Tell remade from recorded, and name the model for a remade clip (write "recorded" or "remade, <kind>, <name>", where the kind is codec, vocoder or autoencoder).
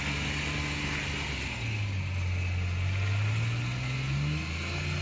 recorded